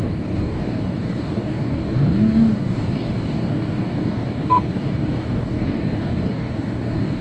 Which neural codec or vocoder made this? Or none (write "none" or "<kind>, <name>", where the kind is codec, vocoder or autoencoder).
codec, DAC